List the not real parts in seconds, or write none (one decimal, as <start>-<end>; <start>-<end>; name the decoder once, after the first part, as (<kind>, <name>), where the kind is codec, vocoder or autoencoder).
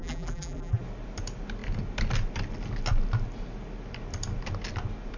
0.0-0.8 (vocoder, BigVGAN v2)